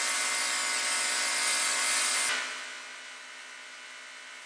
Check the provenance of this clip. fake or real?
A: real